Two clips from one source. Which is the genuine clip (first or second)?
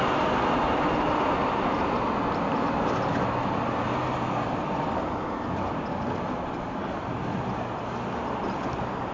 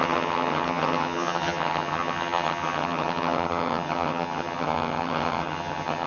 first